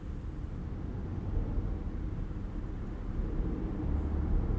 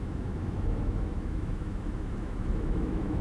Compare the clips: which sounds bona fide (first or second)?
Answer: first